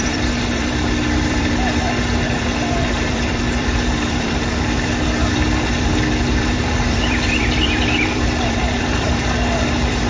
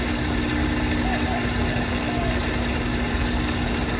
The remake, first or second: first